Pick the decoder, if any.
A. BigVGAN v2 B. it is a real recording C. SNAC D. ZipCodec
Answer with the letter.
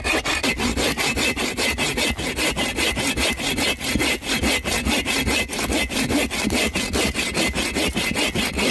B